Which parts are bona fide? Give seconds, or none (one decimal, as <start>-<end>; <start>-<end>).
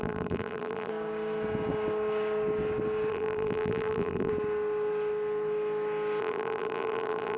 0.9-3.1; 4.3-6.2